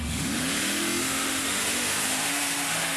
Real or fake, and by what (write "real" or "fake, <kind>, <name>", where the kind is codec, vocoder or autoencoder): fake, autoencoder, DAC-VAE